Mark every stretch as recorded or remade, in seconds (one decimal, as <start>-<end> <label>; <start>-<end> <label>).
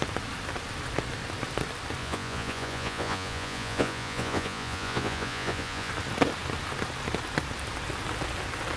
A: 0.0-2.0 recorded; 2.0-5.9 remade; 5.9-8.8 recorded